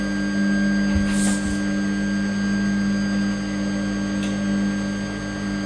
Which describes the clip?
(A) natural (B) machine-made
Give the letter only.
A